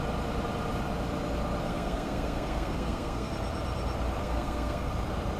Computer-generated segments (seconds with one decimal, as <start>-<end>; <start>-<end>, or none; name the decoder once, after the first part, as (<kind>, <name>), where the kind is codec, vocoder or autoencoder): 1.6-3.3 (codec, SNAC); 4.2-4.9